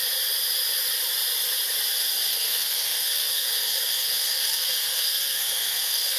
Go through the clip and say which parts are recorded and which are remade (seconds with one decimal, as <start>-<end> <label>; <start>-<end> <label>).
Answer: 0.0-2.3 recorded; 2.3-6.2 remade